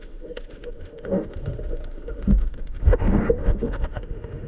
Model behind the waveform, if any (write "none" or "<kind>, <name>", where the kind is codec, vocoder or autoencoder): autoencoder, DAC-VAE